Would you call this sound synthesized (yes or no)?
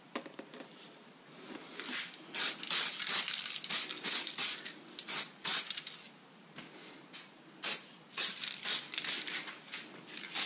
no